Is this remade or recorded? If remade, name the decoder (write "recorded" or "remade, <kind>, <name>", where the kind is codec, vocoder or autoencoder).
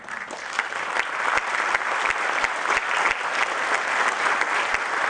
recorded